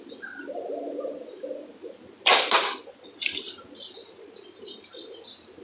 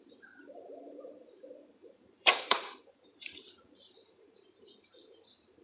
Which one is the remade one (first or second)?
second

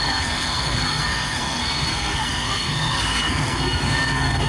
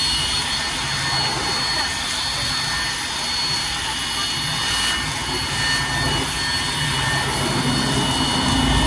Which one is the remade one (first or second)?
first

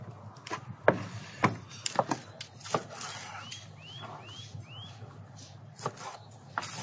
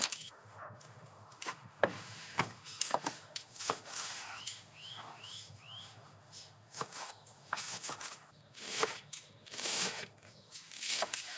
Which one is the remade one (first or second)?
second